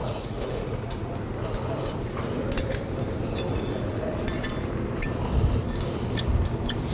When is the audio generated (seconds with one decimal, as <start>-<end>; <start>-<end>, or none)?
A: 0.0-1.1; 3.5-4.2